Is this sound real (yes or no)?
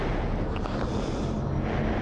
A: yes